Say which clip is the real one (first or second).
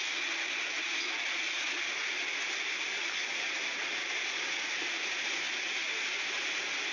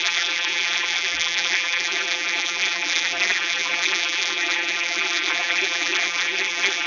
first